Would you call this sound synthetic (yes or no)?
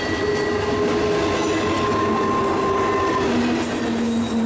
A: no